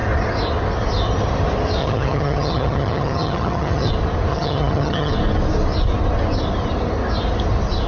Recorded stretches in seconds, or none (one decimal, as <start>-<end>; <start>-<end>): 0.0-1.8; 3.9-4.3; 5.1-7.9